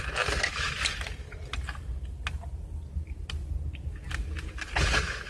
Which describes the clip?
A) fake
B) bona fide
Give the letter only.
B